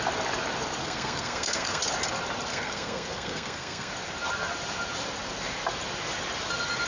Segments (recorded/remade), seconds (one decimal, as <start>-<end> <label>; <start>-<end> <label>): 0.0-0.8 recorded; 0.8-1.8 remade; 1.8-2.5 recorded; 2.5-3.9 remade; 3.9-6.9 recorded

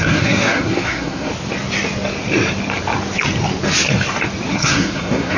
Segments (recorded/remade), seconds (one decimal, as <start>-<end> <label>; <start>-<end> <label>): 0.0-1.3 remade; 1.3-4.5 recorded; 4.5-5.4 remade

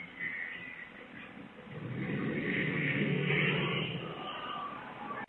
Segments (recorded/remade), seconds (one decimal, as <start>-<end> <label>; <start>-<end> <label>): 0.0-2.4 recorded; 2.4-3.3 remade; 3.3-5.3 recorded